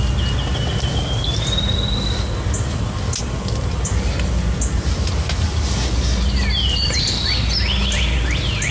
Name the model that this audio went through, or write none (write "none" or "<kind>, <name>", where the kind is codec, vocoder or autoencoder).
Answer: none